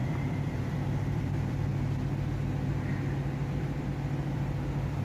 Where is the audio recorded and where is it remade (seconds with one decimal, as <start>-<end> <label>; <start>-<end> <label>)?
0.0-1.7 remade; 1.7-3.8 recorded; 3.8-5.0 remade